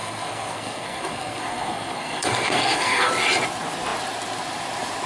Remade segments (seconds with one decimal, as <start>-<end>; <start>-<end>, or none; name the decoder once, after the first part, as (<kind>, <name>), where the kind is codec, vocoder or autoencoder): 0.0-3.1 (codec, SNAC)